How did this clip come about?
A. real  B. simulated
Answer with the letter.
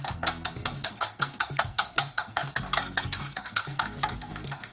B